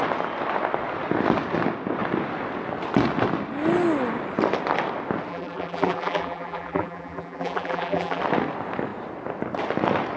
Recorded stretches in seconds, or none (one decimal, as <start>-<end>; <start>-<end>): 0.0-5.3; 8.2-10.2